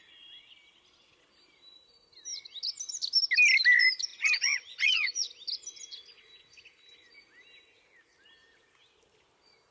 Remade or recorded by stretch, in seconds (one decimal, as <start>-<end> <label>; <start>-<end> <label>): 0.0-4.1 recorded; 4.1-5.3 remade; 5.3-9.7 recorded